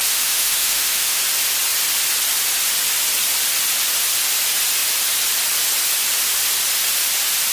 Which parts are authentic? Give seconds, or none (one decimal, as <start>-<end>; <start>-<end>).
1.2-7.5